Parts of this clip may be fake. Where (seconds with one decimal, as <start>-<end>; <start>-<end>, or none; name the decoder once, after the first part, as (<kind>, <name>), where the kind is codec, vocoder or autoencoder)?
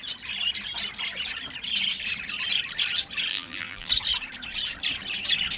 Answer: 3.3-3.9 (vocoder, BigVGAN v2)